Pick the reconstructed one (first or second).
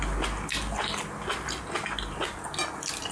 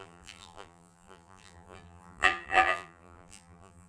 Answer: second